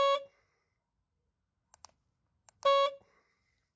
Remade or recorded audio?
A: recorded